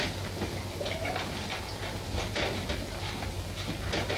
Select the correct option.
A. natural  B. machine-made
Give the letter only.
A